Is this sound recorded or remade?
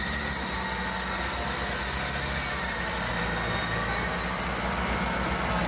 recorded